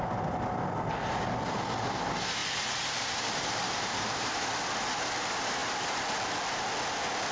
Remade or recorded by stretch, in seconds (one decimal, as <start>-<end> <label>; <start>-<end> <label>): 0.0-2.4 recorded; 2.4-4.3 remade; 4.3-7.3 recorded